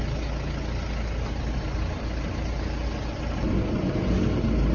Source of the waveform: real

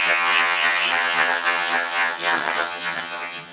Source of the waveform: fake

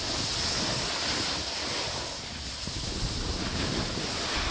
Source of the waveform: real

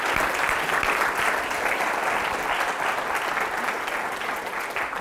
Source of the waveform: real